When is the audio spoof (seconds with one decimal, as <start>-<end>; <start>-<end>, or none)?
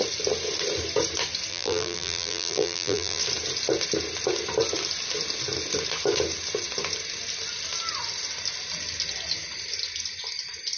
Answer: 1.5-3.2